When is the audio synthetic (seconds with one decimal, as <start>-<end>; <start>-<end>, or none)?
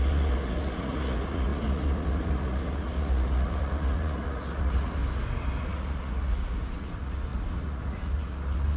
0.0-5.0; 5.6-8.8